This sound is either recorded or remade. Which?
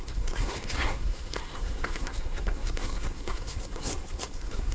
remade